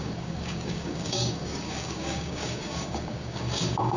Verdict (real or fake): fake